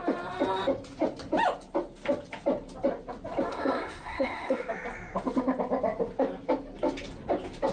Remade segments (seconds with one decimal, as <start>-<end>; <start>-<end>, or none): 3.5-4.6